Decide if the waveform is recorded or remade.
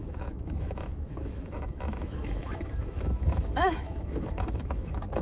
remade